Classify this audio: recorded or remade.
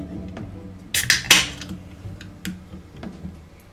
recorded